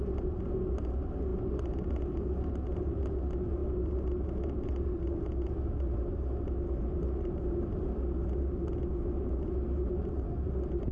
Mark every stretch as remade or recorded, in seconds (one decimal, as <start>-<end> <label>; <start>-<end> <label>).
0.0-10.9 recorded